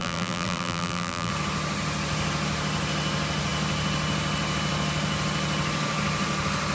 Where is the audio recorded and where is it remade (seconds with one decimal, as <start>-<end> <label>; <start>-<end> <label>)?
0.0-1.3 remade; 1.3-6.7 recorded